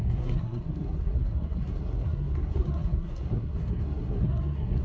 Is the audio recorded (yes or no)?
no